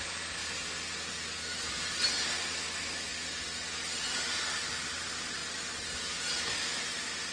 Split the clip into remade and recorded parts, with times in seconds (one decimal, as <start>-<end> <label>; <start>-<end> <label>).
0.0-7.3 recorded